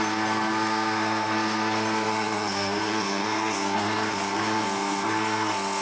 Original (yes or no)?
no